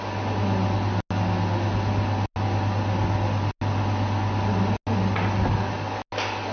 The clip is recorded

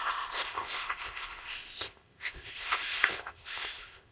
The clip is remade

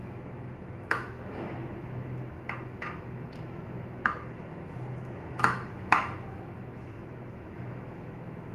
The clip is remade